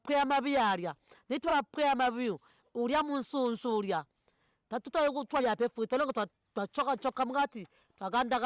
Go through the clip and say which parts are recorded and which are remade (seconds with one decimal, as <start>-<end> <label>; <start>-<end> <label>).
0.0-8.5 recorded